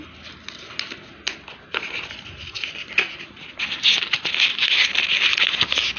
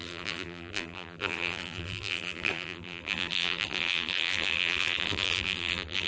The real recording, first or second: first